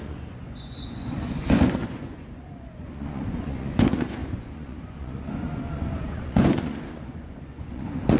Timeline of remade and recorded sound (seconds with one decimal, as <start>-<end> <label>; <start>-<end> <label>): 0.0-8.2 remade